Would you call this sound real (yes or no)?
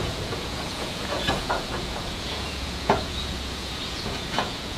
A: no